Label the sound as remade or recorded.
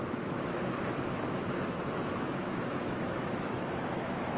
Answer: remade